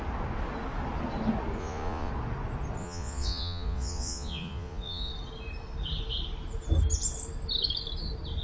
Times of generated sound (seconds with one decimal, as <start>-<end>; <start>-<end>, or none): 1.6-2.1; 2.8-5.1